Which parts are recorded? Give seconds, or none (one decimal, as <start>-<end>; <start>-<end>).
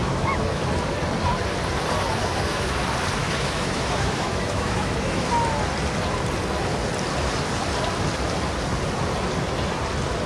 0.6-2.2; 2.8-3.2; 5.3-10.3